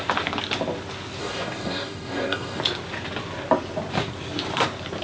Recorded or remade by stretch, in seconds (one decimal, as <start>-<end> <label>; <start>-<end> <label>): 0.0-1.2 recorded; 1.2-2.6 remade; 2.6-5.0 recorded